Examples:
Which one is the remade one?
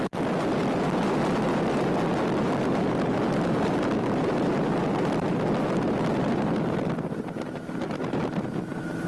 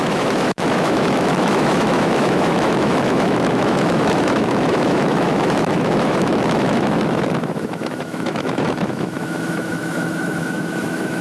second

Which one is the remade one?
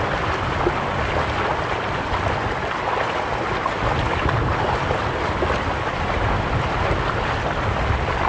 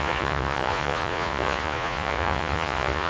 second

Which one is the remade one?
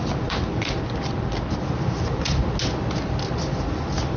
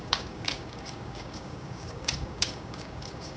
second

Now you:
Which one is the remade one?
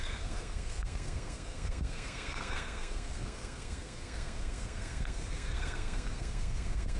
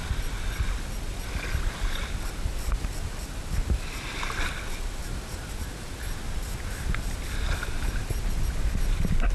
first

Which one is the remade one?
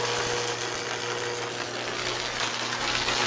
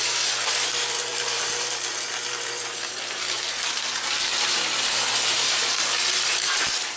second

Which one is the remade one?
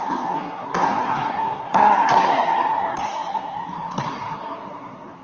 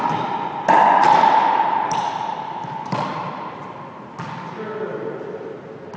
first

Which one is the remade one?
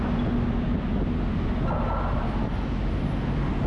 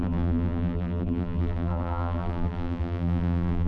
second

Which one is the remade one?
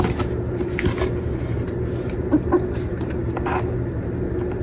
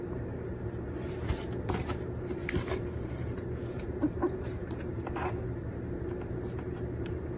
second